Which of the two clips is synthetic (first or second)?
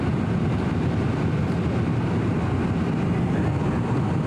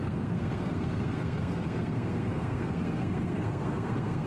second